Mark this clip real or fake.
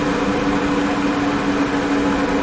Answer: real